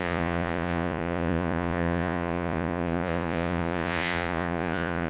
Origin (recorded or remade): remade